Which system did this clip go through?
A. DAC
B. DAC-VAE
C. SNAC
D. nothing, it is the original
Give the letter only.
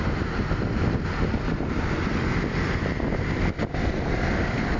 D